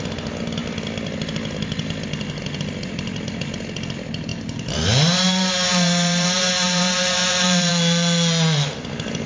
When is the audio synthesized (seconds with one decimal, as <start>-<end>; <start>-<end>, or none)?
4.3-7.7